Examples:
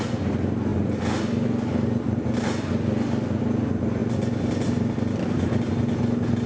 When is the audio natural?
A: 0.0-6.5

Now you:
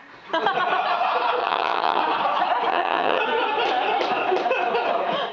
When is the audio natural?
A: 0.0-1.4; 2.0-2.7; 3.2-5.3

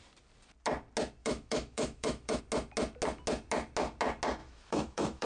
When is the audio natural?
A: 0.0-1.2; 2.4-4.4

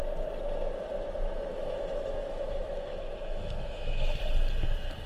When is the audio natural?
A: 0.0-1.5; 4.2-5.1

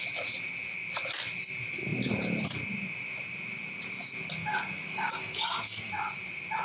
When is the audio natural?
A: 0.0-4.4; 5.9-6.6

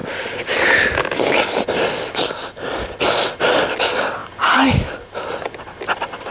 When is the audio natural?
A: 0.0-6.3

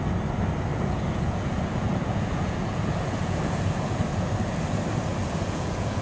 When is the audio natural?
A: 0.0-0.7; 4.3-5.2